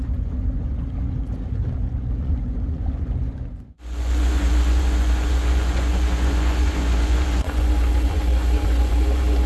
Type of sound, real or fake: fake